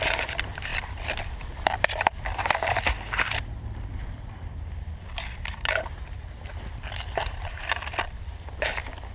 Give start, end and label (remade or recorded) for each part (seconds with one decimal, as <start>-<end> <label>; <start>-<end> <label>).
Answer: 0.0-9.1 remade